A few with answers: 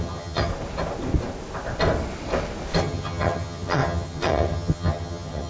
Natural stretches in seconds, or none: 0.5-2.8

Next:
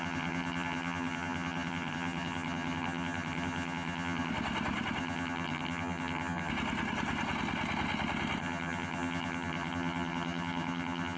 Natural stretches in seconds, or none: 4.3-5.0; 6.5-8.4

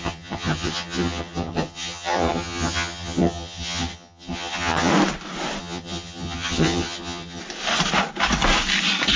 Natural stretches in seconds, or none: 4.9-5.6; 7.4-9.2

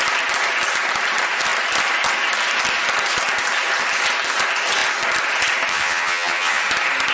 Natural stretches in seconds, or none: 0.0-5.7; 6.6-7.1

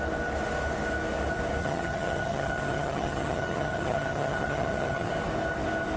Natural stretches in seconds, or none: 0.0-1.6; 5.1-6.0

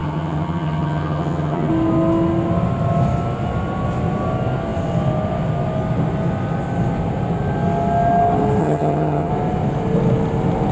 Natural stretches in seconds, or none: 1.7-8.6; 9.3-10.7